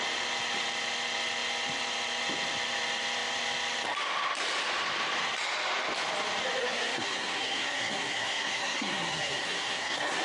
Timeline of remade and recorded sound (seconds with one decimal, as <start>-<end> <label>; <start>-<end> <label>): 0.0-6.6 recorded; 6.6-10.2 remade

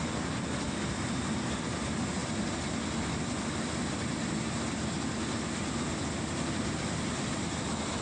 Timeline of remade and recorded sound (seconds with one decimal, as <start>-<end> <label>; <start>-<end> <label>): 0.0-8.0 recorded

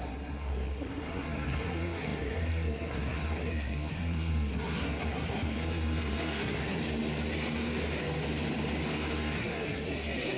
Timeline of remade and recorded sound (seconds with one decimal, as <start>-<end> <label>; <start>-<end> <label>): 0.0-6.8 remade; 6.8-9.1 recorded; 9.1-10.4 remade

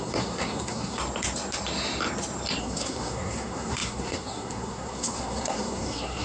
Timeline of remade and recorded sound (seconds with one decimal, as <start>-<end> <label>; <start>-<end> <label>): 0.0-1.0 remade; 1.0-2.6 recorded; 2.6-6.2 remade

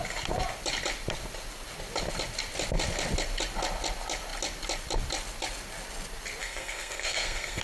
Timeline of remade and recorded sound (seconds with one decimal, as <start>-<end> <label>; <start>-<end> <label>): 0.0-6.4 recorded; 6.4-7.6 remade

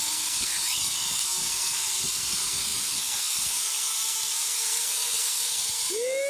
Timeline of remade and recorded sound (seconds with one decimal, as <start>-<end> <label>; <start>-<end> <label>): 0.0-6.3 remade